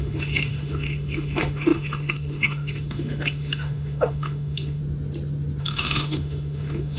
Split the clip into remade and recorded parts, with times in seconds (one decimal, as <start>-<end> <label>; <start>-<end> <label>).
0.0-4.8 remade; 4.8-5.6 recorded; 5.6-7.0 remade